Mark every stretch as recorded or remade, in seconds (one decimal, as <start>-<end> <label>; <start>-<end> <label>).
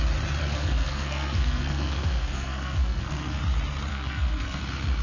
0.0-0.4 recorded; 0.4-3.4 remade; 3.4-3.9 recorded; 3.9-4.6 remade; 4.6-5.0 recorded